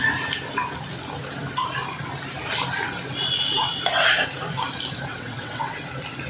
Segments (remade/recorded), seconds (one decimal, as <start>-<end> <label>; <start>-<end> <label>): 0.0-5.1 recorded; 5.1-5.8 remade; 5.8-6.3 recorded